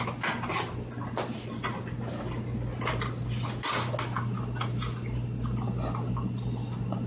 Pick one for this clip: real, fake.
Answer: real